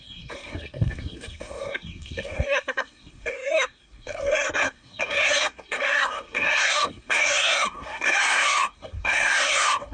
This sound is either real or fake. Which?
fake